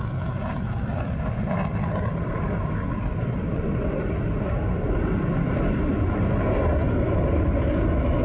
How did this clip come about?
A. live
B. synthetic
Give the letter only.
A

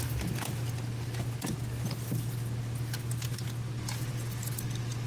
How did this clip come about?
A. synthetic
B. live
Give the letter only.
B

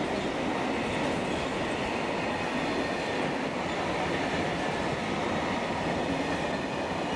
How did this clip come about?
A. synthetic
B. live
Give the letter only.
B